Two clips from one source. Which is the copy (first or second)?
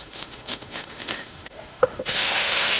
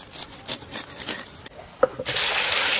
first